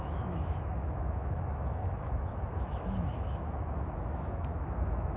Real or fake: fake